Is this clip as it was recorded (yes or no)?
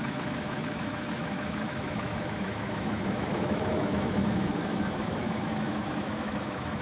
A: no